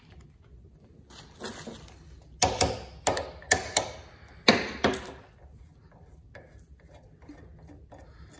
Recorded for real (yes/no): yes